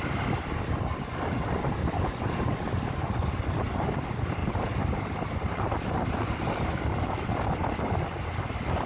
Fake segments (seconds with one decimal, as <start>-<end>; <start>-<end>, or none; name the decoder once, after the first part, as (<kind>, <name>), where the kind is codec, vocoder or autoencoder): 1.8-2.5 (vocoder, BigVGAN v2); 4.4-7.1